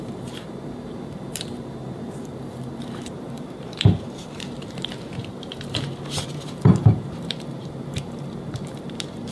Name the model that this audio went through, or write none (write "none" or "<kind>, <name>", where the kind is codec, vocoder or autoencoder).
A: vocoder, BigVGAN v2